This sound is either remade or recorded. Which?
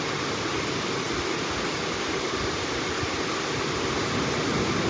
recorded